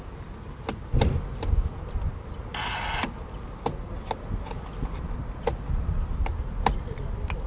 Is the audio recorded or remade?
recorded